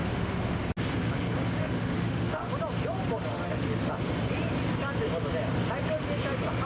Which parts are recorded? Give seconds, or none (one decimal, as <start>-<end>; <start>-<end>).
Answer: 0.6-1.6; 2.5-3.3; 3.9-6.6